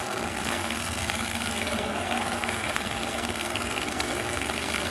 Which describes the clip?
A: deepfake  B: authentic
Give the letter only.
A